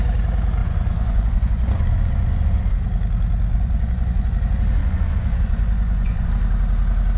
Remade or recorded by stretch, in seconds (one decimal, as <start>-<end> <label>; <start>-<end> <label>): 0.0-0.6 recorded; 0.6-2.6 remade; 2.6-3.5 recorded; 3.5-4.3 remade; 4.3-4.8 recorded; 4.8-6.3 remade; 6.3-7.2 recorded